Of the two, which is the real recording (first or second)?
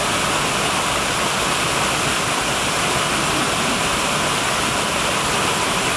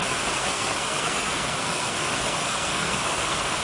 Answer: first